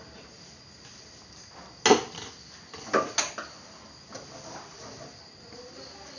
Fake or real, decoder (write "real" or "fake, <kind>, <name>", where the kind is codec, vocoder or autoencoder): real